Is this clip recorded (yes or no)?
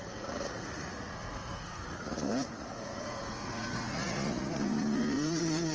no